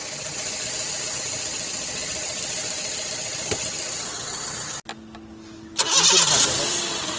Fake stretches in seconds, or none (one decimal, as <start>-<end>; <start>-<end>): none